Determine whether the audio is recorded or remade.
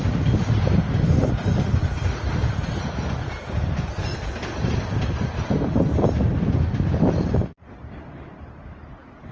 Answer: recorded